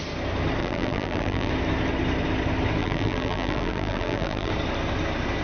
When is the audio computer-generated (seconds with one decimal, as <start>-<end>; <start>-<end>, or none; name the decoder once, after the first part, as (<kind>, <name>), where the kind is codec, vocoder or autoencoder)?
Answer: 0.6-1.5 (vocoder, BigVGAN v2); 2.8-4.5